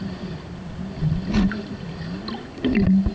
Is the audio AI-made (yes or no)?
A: no